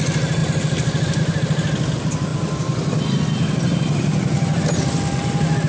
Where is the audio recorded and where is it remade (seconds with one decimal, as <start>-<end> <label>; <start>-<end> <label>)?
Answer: 0.0-5.7 recorded